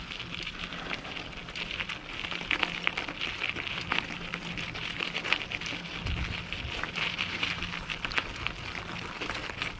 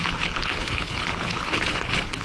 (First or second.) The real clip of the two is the first